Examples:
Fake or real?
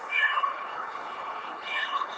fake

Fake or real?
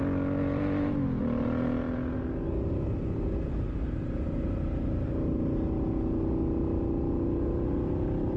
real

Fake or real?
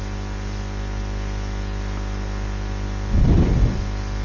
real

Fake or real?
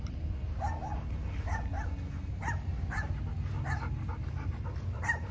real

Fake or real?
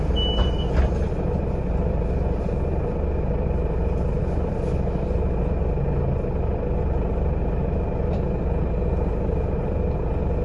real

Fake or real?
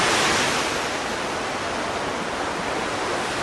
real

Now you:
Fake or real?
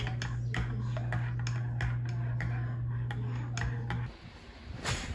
real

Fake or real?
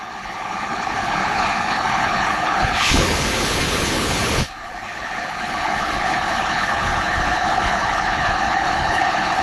fake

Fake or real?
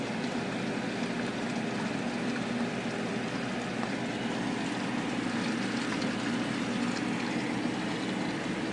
real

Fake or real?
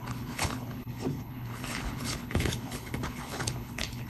fake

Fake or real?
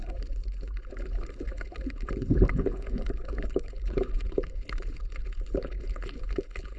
fake